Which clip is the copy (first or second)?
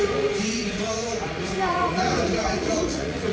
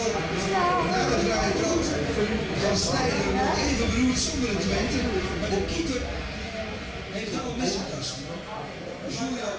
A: first